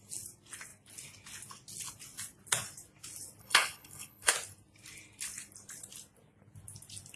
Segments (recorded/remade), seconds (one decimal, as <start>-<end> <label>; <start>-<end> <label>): 0.0-3.4 recorded; 3.4-4.3 remade; 4.3-7.2 recorded